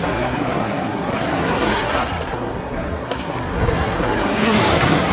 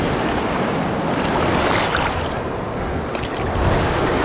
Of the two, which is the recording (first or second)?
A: second